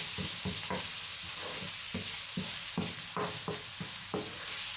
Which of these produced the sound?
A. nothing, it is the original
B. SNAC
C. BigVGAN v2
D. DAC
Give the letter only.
A